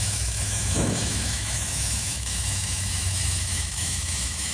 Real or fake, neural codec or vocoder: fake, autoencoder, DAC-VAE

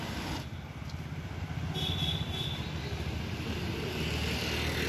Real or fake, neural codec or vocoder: real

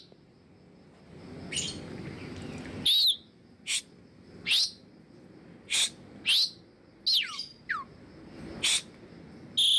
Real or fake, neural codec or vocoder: real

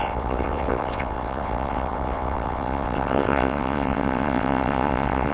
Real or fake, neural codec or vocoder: fake, vocoder, WaveNeXt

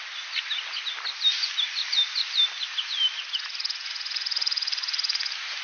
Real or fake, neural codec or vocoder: real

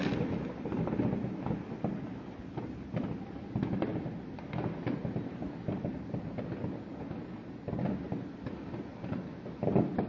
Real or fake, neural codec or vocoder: real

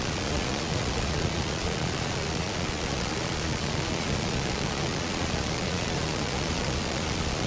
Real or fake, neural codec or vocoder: fake, vocoder, Vocos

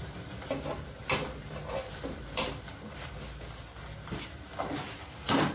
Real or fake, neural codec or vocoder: real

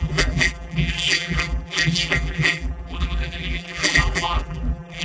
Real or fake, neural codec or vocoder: fake, vocoder, BigVGAN v2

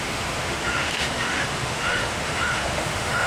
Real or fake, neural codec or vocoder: fake, autoencoder, DAC-VAE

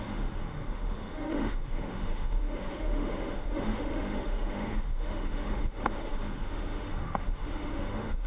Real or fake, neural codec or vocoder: fake, autoencoder, DAC-VAE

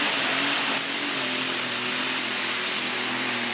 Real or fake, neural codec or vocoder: real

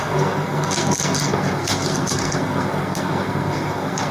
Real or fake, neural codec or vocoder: fake, codec, SNAC